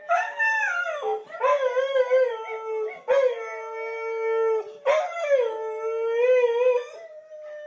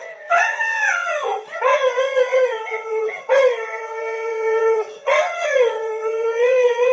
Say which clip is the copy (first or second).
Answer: second